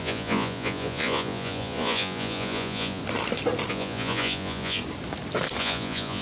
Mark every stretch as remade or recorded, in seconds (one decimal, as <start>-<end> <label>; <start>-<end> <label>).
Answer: 0.0-3.0 remade; 3.0-3.7 recorded; 3.7-4.8 remade; 4.8-5.6 recorded; 5.6-6.2 remade